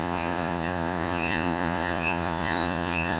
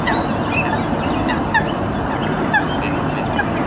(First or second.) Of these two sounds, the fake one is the first